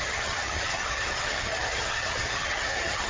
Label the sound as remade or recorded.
remade